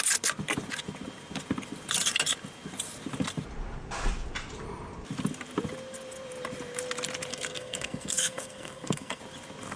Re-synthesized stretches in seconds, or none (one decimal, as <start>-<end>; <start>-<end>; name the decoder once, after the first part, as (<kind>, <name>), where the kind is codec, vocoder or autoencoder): 7.3-9.2 (codec, SNAC)